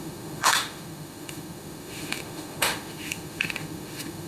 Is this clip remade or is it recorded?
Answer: remade